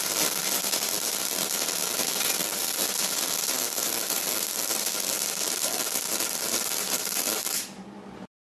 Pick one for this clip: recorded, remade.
remade